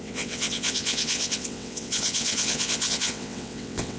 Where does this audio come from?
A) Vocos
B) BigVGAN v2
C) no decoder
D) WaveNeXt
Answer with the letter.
D